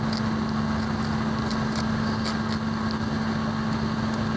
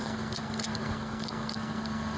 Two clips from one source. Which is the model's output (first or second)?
second